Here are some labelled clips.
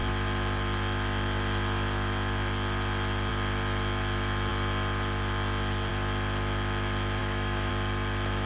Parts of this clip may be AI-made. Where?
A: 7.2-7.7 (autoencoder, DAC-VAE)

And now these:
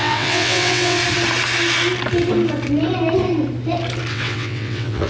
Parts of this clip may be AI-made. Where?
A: 0.0-1.0 (vocoder, WaveNeXt); 4.1-5.1